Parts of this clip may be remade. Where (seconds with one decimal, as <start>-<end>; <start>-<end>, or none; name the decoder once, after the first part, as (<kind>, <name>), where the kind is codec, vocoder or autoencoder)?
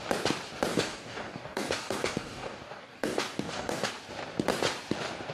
0.7-3.9 (codec, DAC)